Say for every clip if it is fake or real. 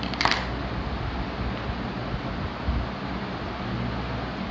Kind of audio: real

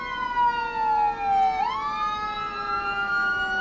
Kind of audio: real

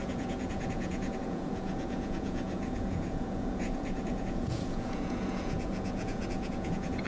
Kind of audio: fake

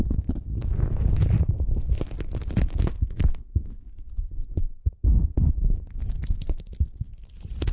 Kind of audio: real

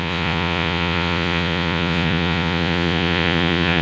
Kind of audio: fake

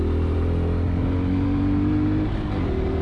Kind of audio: real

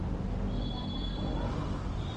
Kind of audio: real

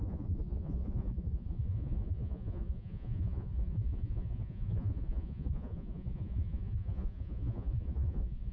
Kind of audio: fake